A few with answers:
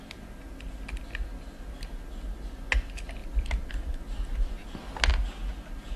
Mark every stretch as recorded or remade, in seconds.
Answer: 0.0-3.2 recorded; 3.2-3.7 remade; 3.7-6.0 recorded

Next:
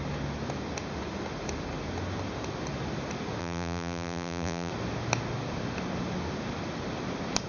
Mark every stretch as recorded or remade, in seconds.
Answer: 0.0-3.4 recorded; 3.4-4.7 remade; 4.7-7.5 recorded

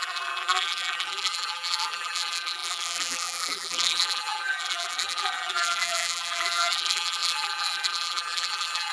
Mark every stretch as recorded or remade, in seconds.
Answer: 0.0-8.9 remade